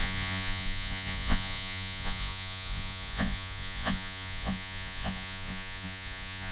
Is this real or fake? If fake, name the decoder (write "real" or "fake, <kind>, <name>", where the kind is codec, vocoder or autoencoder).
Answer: fake, vocoder, Vocos